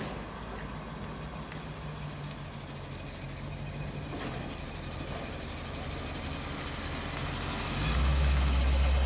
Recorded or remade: recorded